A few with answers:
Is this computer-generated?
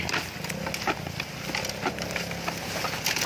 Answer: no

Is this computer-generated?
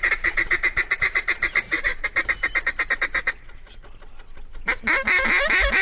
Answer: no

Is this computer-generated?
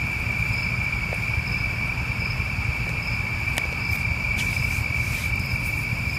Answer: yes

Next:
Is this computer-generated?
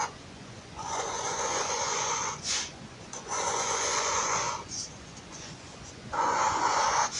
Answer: yes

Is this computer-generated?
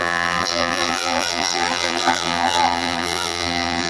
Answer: yes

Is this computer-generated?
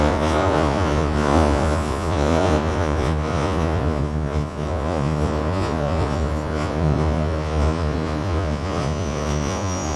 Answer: yes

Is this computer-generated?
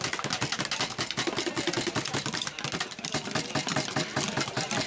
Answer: no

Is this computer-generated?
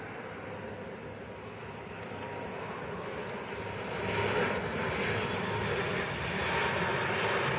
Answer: no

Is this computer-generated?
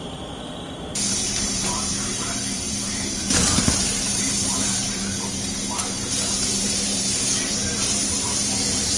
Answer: yes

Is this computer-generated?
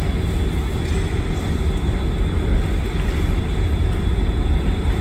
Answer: no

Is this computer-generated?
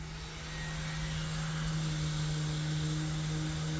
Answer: no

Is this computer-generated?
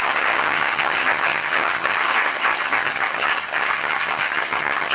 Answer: yes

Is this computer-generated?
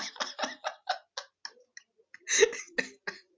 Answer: no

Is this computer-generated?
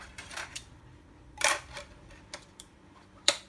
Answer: yes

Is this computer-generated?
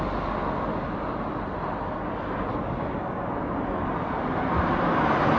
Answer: no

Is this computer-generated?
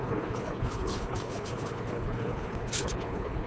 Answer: yes